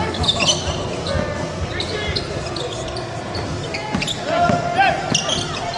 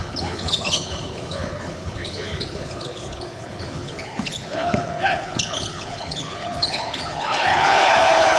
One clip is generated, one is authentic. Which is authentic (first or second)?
first